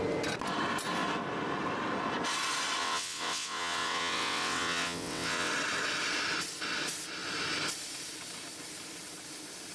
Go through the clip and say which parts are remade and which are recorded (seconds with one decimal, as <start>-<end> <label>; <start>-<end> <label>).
0.0-2.8 recorded; 2.8-5.5 remade; 5.5-9.7 recorded